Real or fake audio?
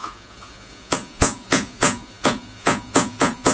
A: fake